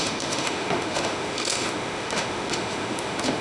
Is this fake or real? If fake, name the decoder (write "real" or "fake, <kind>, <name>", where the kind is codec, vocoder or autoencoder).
fake, autoencoder, DAC-VAE